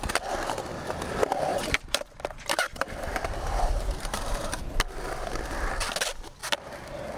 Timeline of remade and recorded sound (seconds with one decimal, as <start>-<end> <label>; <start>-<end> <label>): 0.0-1.5 recorded; 1.5-4.6 remade; 4.6-7.2 recorded